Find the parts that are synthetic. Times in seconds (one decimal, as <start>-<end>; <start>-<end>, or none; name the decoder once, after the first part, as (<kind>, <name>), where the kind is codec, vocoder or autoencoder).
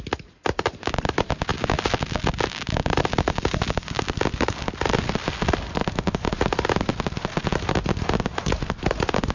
none